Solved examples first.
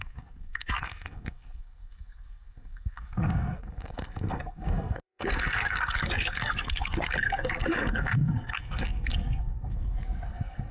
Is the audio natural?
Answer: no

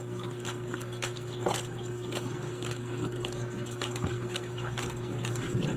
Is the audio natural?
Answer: no